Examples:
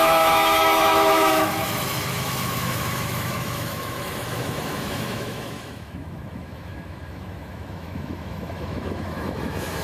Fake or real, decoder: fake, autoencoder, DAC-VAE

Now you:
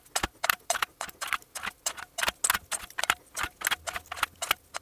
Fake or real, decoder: real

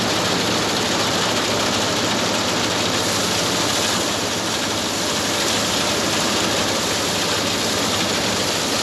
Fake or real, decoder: real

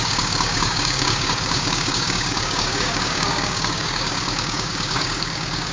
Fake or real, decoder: fake, codec, DAC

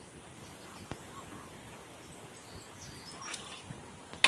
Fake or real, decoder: real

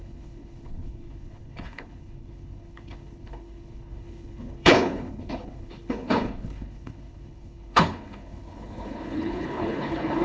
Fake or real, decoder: fake, codec, HILCodec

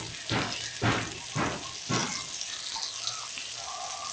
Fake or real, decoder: real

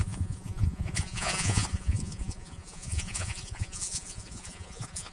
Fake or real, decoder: fake, vocoder, Vocos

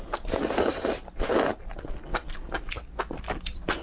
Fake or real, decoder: real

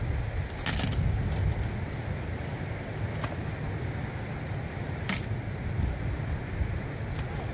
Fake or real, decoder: real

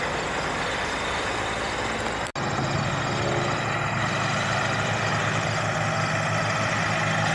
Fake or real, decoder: real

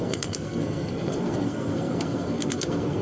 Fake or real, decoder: fake, codec, SNAC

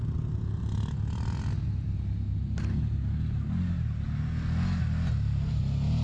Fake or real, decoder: real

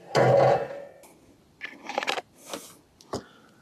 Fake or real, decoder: real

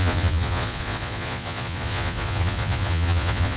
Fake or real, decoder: fake, vocoder, Vocos